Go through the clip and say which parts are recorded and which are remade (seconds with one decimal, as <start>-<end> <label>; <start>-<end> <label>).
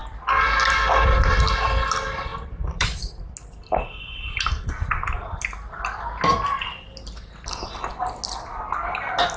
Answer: 0.0-1.2 remade; 1.2-2.3 recorded; 2.3-3.3 remade; 3.3-9.4 recorded